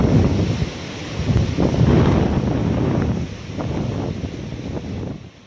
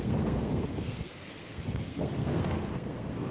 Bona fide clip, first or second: first